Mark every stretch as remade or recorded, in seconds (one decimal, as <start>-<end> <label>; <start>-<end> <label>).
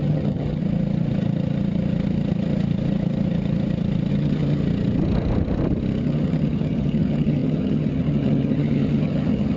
0.0-0.6 remade; 0.6-4.1 recorded; 4.1-4.6 remade; 4.6-6.0 recorded; 6.0-9.6 remade